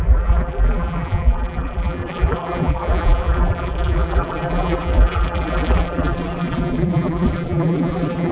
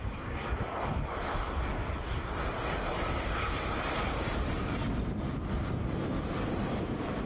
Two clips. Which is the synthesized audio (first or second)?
first